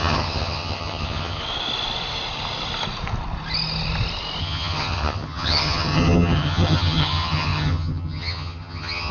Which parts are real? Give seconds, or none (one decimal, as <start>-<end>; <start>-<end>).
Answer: 1.4-4.4